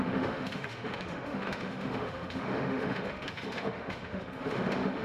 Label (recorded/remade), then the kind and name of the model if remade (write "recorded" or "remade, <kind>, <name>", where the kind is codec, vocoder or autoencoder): remade, autoencoder, DAC-VAE